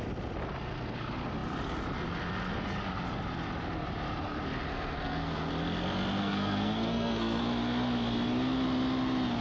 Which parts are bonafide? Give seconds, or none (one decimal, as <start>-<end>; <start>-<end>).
0.0-4.7; 5.5-6.2; 7.4-9.4